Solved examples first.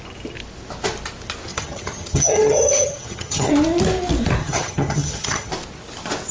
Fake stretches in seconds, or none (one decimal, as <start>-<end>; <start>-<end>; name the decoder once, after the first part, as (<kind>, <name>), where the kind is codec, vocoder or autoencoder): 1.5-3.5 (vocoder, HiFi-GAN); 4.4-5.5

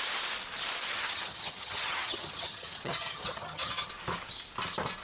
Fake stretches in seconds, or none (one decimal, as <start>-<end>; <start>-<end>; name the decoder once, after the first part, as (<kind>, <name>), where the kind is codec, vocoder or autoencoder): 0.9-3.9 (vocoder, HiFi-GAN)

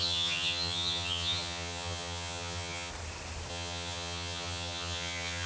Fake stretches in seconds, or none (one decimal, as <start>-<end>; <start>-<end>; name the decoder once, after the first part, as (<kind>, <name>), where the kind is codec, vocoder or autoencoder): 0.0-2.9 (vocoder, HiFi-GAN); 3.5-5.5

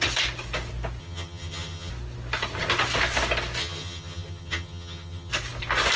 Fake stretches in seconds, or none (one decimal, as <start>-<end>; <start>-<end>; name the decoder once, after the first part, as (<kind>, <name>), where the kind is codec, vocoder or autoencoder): 1.0-1.9 (vocoder, HiFi-GAN); 3.6-5.3